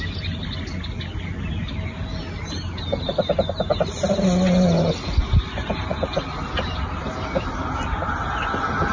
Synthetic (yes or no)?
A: no